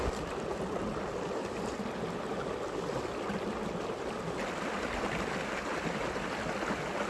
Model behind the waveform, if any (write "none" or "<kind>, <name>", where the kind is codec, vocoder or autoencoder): none